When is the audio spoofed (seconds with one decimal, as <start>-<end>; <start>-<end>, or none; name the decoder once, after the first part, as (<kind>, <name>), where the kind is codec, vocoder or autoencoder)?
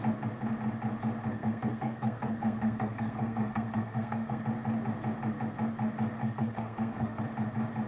1.3-4.4 (codec, SNAC); 6.2-7.2